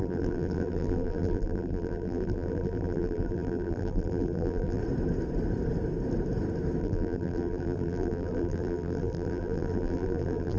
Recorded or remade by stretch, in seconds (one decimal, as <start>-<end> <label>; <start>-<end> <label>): 0.0-4.8 remade; 4.8-6.8 recorded; 6.8-10.6 remade

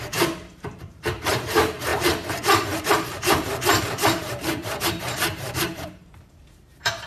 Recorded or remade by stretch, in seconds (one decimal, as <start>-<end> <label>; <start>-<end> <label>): 0.0-7.1 remade

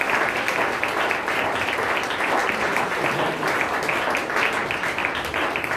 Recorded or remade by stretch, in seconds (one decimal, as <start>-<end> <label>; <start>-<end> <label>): 0.0-2.4 recorded; 2.4-3.9 remade; 3.9-5.0 recorded; 5.0-5.8 remade

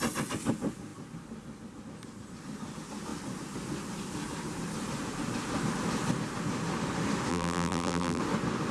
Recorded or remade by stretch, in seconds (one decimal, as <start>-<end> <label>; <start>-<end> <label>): 0.0-7.3 recorded; 7.3-8.2 remade; 8.2-8.7 recorded

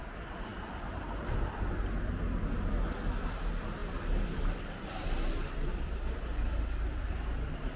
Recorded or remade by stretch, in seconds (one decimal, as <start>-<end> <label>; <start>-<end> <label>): 0.0-3.8 recorded; 3.8-6.2 remade; 6.2-7.8 recorded